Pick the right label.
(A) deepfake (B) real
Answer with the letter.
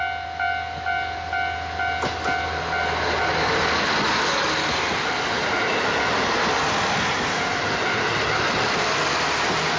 B